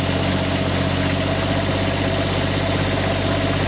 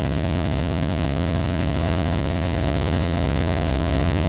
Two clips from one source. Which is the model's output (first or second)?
second